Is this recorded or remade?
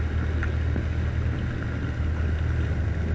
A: recorded